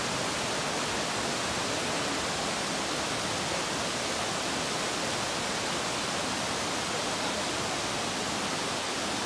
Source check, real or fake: real